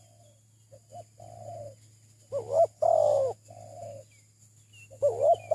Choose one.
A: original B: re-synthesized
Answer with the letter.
A